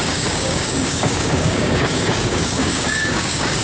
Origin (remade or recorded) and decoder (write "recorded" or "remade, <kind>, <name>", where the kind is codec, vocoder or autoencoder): remade, codec, DAC